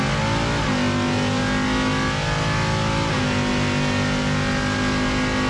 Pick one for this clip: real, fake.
real